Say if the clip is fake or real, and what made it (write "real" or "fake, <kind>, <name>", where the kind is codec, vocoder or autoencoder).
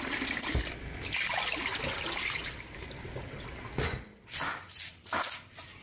real